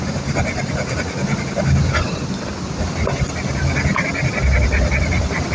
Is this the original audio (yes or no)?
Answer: yes